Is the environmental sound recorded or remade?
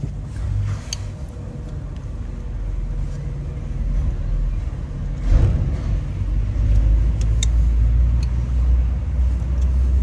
recorded